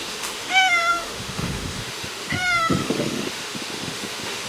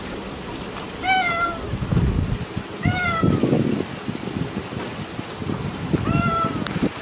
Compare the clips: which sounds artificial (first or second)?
first